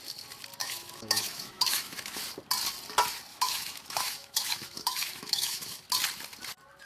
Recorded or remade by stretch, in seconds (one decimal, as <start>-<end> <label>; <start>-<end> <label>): 0.0-0.6 recorded; 0.6-2.2 remade; 2.2-3.3 recorded; 3.3-5.8 remade; 5.8-6.9 recorded